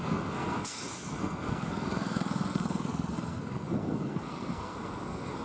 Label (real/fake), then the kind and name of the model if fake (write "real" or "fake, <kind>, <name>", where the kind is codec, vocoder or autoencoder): fake, codec, SNAC